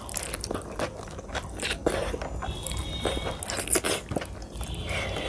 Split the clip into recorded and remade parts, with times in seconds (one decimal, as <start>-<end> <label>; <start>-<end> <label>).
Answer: 0.0-5.3 recorded